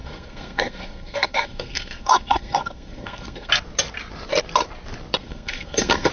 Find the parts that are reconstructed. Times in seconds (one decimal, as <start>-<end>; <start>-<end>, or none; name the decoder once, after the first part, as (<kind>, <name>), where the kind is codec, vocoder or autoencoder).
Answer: 0.0-3.5 (codec, SNAC); 5.2-6.1